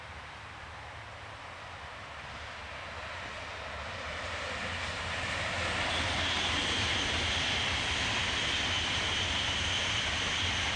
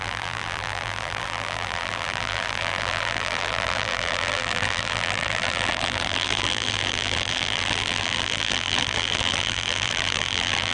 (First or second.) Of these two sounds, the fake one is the second